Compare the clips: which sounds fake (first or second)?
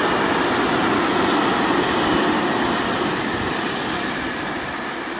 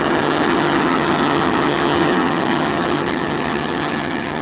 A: second